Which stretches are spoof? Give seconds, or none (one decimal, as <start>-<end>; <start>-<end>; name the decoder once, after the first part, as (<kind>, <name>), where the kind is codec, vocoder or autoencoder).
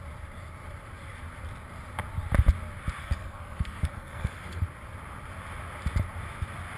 3.0-4.6 (codec, SNAC)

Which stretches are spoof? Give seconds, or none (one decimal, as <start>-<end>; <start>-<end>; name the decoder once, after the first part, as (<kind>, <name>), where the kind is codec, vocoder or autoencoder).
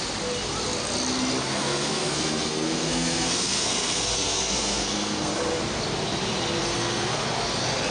1.5-5.3 (codec, SNAC); 6.6-7.2